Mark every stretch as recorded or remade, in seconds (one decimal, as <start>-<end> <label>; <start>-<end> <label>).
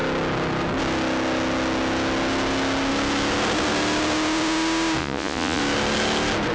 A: 0.0-5.0 recorded; 5.0-5.6 remade; 5.6-6.5 recorded